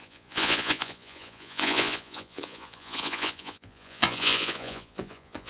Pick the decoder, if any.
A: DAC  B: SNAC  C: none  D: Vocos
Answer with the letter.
D